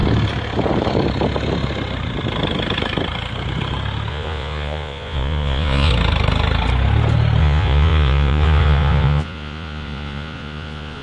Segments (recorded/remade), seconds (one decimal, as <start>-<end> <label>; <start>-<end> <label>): 0.0-4.1 recorded; 4.1-5.9 remade; 5.9-7.4 recorded; 7.4-11.0 remade